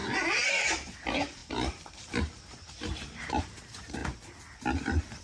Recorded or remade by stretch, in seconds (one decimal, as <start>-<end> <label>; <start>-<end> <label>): 0.0-0.5 recorded; 0.5-4.0 remade; 4.0-4.6 recorded; 4.6-5.2 remade